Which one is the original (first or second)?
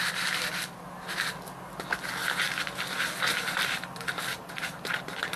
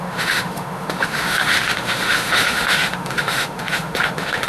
first